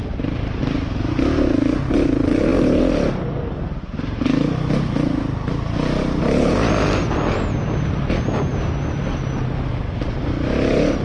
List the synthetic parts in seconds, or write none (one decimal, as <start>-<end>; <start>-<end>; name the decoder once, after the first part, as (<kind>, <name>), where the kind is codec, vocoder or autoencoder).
none

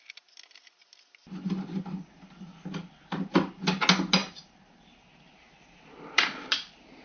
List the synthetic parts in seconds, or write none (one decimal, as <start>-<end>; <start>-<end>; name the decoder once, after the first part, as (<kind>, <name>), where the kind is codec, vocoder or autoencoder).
4.2-7.0 (vocoder, BigVGAN v2)

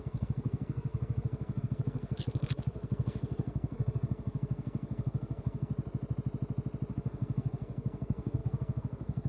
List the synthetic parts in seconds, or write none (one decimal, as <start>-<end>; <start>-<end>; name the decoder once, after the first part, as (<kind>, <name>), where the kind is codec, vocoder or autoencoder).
0.0-5.7 (codec, SNAC); 6.9-9.3